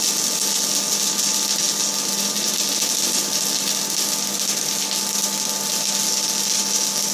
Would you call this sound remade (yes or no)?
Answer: no